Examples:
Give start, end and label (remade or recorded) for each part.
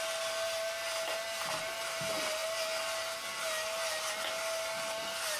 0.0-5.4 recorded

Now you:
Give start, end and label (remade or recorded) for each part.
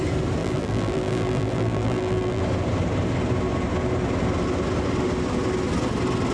0.0-0.4 recorded; 0.4-2.4 remade; 2.4-6.3 recorded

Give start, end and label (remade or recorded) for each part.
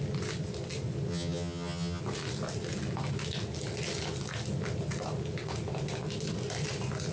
0.0-1.1 recorded; 1.1-2.0 remade; 2.0-7.1 recorded